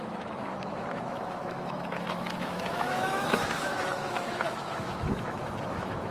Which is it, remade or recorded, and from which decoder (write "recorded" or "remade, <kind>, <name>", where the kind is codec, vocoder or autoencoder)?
remade, autoencoder, DAC-VAE